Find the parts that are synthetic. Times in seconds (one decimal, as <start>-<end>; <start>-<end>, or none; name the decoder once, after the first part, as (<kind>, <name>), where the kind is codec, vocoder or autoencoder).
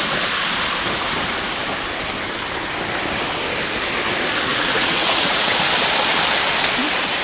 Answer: 4.5-5.6 (vocoder, Vocos)